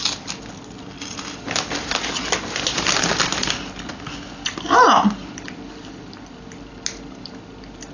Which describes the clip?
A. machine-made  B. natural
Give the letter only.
B